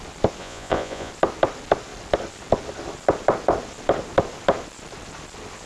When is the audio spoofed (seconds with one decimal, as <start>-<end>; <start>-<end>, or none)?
0.4-1.1